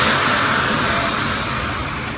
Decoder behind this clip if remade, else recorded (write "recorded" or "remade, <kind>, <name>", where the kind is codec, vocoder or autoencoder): recorded